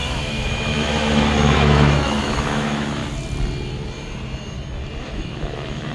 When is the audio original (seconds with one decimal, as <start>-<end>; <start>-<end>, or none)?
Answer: 3.0-5.0